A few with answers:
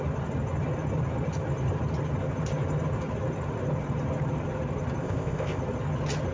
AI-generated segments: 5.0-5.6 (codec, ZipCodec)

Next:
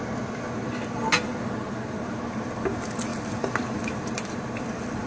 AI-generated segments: 3.1-5.1 (vocoder, BigVGAN v2)

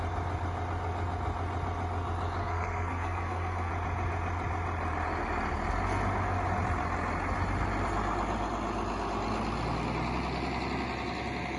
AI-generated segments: 2.4-3.7 (codec, SNAC)

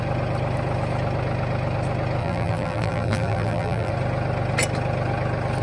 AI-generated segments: 2.2-3.9 (vocoder, BigVGAN v2)

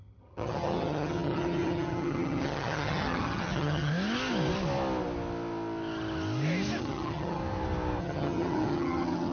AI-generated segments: 0.0-3.9 (vocoder, HiFi-GAN); 6.8-7.4; 8.0-9.3

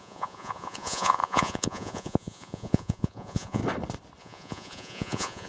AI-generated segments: 0.0-3.6 (vocoder, Vocos); 4.2-5.5

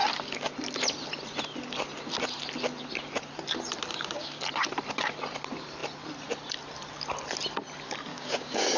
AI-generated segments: 3.9-4.4 (codec, DAC); 8.1-8.8